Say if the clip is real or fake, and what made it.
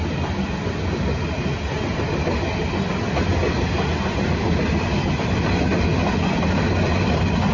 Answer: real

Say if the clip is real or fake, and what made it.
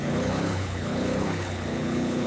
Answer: fake, codec, HILCodec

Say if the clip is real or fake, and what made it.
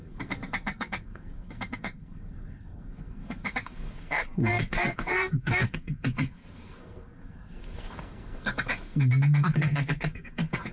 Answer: fake, codec, SNAC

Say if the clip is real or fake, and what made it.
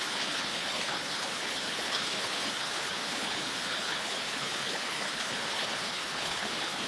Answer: fake, codec, HILCodec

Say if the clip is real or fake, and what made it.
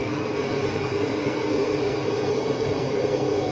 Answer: fake, codec, SNAC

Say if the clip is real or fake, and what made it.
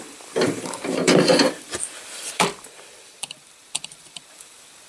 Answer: fake, vocoder, BigVGAN v2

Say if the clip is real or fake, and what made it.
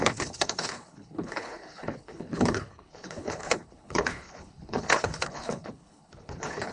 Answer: fake, codec, HILCodec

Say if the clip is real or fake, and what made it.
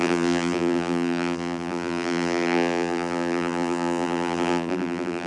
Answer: fake, vocoder, BigVGAN v2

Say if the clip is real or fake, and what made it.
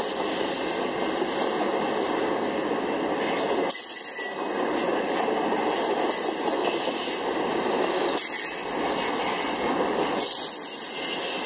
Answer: real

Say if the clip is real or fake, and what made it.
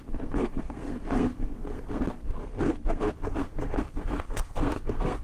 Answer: fake, codec, SNAC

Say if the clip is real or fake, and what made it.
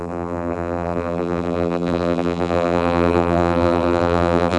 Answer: fake, vocoder, BigVGAN v2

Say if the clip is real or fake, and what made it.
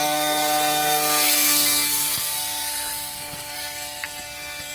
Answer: fake, codec, SNAC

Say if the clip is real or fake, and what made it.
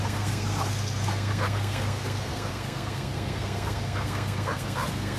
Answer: fake, codec, SNAC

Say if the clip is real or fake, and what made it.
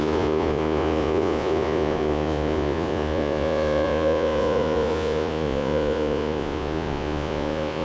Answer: fake, vocoder, Vocos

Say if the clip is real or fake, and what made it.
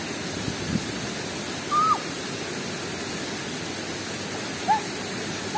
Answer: real